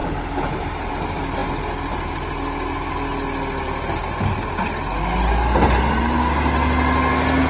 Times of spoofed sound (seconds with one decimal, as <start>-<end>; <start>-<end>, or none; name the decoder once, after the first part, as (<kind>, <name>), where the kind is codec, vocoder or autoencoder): none